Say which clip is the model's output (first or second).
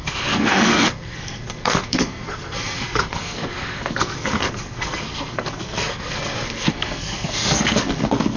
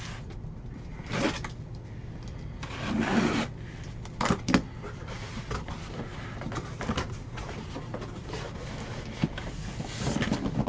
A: first